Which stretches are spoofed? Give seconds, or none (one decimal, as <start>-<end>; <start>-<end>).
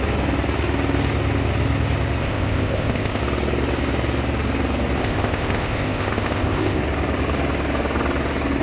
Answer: 2.2-3.2; 5.0-6.8